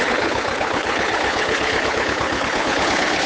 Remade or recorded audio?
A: remade